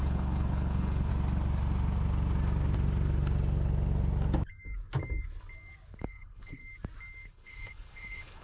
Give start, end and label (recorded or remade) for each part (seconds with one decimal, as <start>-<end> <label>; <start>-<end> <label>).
0.0-1.1 remade; 1.1-6.0 recorded; 6.0-6.6 remade; 6.6-7.3 recorded; 7.3-8.4 remade